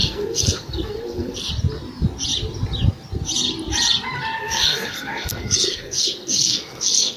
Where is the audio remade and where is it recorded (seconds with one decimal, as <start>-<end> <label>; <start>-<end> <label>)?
0.0-1.5 remade; 1.5-4.4 recorded; 4.4-7.2 remade